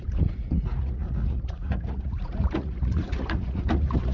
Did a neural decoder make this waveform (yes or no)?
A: yes